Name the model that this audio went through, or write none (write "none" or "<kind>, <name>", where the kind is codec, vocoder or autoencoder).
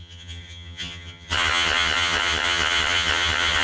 vocoder, HiFi-GAN